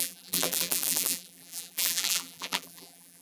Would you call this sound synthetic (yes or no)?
yes